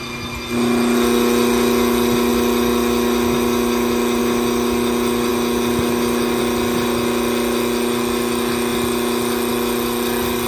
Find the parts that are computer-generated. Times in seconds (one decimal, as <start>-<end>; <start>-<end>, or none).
none

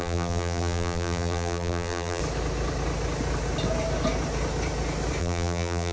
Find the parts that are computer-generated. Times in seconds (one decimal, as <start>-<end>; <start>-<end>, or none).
0.0-2.2; 5.2-5.9